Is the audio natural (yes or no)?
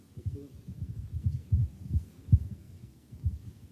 no